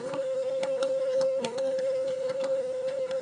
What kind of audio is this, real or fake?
fake